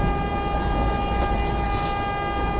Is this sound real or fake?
real